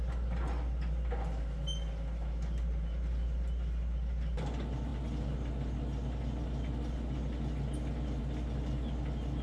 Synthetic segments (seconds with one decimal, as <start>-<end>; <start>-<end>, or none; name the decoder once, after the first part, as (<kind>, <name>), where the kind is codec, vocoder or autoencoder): none